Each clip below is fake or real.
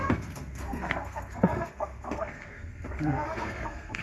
fake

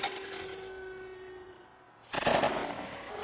real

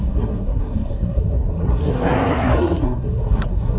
fake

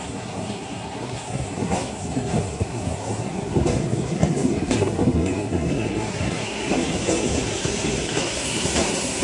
fake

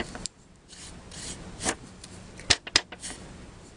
real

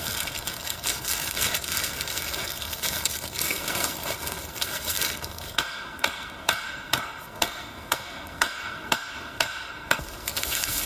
fake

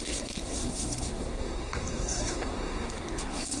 fake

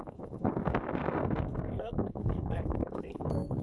fake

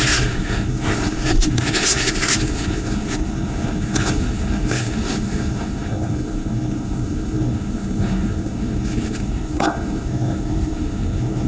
fake